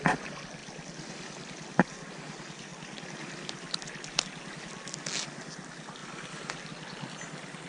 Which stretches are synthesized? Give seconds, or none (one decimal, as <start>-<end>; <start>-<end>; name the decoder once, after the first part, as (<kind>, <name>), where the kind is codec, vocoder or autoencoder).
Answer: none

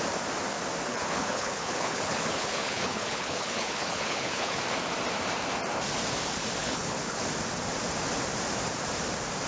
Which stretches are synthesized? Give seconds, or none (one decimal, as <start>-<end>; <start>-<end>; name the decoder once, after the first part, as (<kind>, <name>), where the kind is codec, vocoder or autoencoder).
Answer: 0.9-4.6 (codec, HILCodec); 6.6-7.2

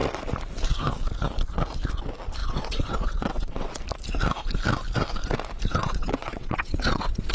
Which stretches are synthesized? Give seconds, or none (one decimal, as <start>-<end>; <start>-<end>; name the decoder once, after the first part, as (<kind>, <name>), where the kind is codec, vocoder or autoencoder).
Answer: 2.4-3.8 (vocoder, WaveNeXt); 5.8-7.3